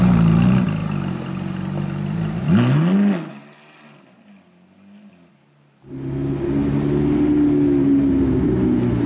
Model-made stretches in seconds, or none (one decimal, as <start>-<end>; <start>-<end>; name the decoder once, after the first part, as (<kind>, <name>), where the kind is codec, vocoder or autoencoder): none